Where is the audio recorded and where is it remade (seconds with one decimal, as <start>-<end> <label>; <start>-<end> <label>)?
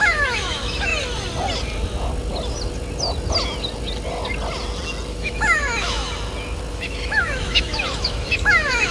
0.0-0.9 remade; 0.9-5.1 recorded; 5.1-6.0 remade; 6.0-6.7 recorded; 6.7-8.9 remade